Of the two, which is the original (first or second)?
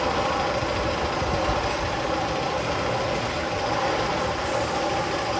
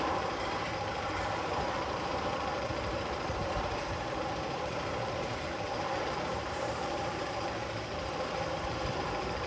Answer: first